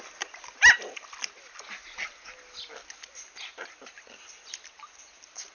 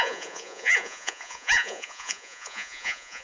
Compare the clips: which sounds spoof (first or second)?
second